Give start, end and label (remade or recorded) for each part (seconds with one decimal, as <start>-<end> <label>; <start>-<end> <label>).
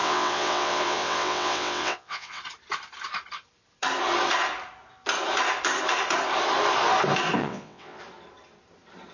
0.0-2.4 remade; 2.4-7.4 recorded; 7.4-8.0 remade; 8.0-9.1 recorded